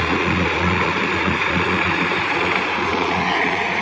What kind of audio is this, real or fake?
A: fake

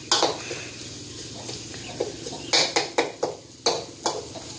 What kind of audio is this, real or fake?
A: real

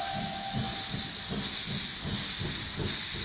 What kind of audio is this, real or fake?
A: real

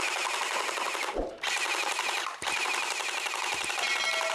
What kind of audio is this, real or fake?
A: real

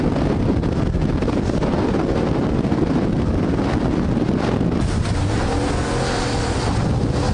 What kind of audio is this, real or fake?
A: real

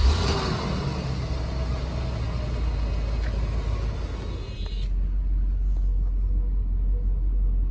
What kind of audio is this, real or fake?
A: real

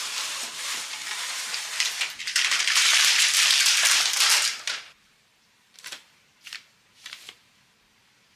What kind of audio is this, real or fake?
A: fake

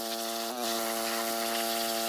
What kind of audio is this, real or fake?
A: real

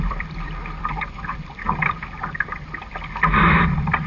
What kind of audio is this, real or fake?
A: fake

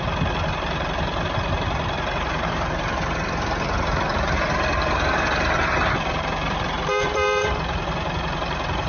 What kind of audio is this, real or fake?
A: fake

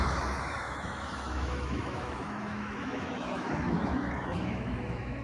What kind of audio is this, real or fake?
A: fake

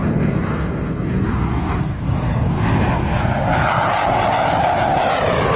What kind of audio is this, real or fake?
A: real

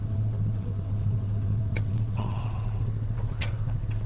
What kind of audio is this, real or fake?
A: fake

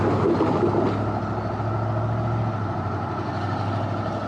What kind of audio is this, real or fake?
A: real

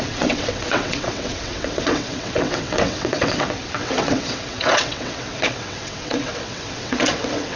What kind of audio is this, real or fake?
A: fake